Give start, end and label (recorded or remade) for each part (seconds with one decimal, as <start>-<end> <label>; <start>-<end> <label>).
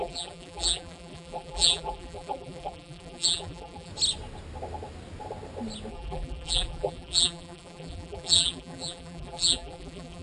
0.0-3.9 remade; 3.9-5.9 recorded; 5.9-10.2 remade